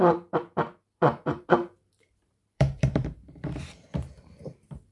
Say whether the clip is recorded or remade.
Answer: remade